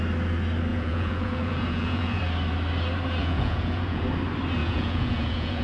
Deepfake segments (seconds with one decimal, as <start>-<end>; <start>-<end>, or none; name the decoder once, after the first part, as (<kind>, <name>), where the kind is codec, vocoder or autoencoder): 0.7-2.2 (vocoder, Vocos); 3.2-4.0; 4.6-5.6